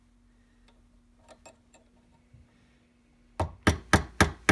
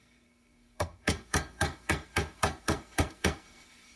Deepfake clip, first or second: second